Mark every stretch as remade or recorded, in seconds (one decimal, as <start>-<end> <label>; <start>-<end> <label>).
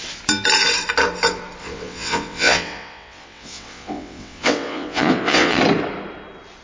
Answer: 0.0-1.6 recorded; 1.6-5.6 remade; 5.6-6.6 recorded